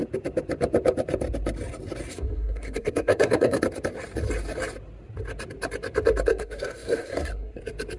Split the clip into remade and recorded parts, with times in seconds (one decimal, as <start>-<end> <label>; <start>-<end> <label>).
0.0-2.1 recorded; 2.1-3.6 remade; 3.6-6.3 recorded; 6.3-7.6 remade; 7.6-8.0 recorded

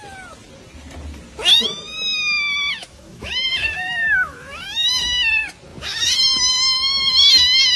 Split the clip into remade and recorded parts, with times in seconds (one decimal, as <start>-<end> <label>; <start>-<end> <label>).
0.0-2.8 recorded; 2.8-4.9 remade; 4.9-7.8 recorded

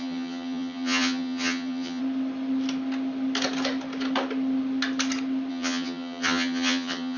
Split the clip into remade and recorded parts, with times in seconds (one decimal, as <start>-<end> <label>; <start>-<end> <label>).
0.0-2.0 remade; 2.0-5.5 recorded; 5.5-7.2 remade